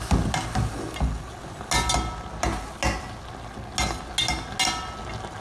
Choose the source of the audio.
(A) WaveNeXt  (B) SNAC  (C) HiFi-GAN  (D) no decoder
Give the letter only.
D